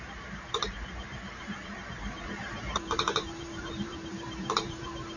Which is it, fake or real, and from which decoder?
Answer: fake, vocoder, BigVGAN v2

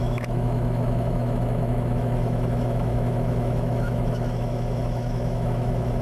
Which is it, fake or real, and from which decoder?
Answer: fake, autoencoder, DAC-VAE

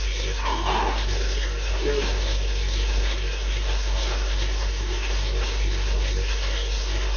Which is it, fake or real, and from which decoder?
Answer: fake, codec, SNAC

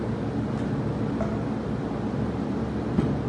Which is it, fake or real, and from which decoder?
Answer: real